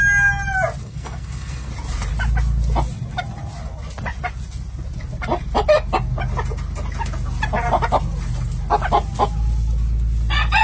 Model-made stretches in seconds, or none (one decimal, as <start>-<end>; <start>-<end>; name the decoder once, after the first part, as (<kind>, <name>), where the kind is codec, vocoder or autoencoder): 0.8-1.7 (codec, SNAC)